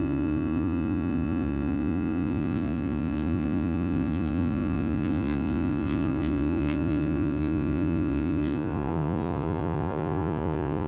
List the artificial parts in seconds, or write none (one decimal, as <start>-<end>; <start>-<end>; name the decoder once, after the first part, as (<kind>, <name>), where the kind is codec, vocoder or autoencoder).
0.0-10.9 (vocoder, Vocos)